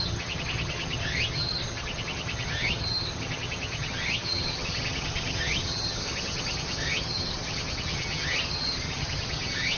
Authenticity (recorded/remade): remade